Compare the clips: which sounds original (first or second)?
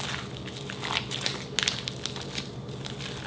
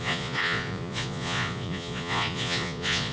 first